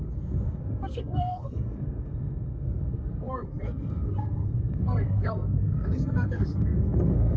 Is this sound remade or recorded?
remade